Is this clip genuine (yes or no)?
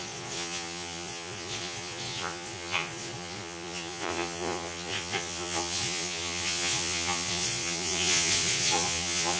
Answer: no